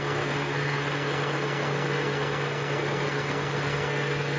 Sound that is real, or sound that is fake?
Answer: fake